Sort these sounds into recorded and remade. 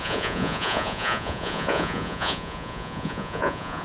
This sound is remade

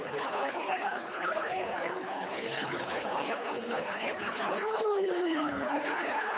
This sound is remade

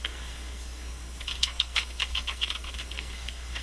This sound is remade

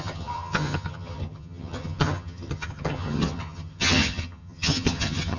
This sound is remade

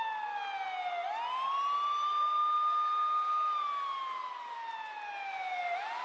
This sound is recorded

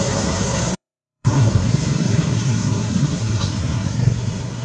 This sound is remade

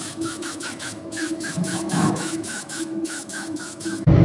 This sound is remade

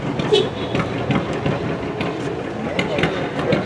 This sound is recorded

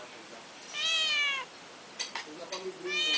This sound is remade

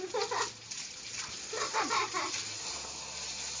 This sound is recorded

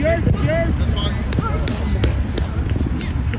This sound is recorded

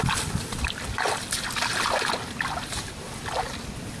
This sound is recorded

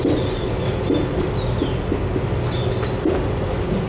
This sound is recorded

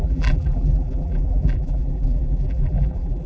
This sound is remade